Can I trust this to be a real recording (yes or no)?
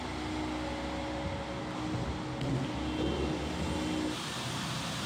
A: yes